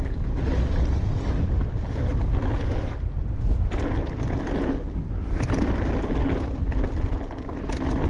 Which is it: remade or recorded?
recorded